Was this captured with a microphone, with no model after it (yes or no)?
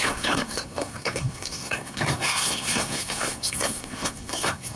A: no